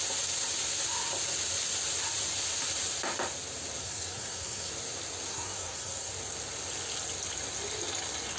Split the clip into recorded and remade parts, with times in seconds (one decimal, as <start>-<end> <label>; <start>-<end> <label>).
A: 0.0-3.8 recorded; 3.8-4.7 remade; 4.7-5.3 recorded; 5.3-6.1 remade; 6.1-8.4 recorded